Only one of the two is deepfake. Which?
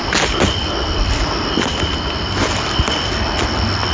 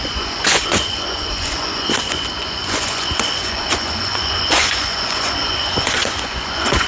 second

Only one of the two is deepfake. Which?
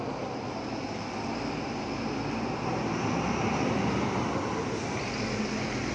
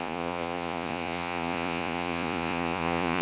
second